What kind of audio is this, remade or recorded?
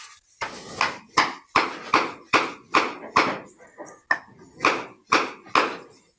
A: recorded